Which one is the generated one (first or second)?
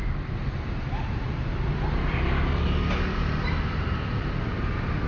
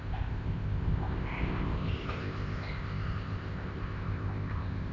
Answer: second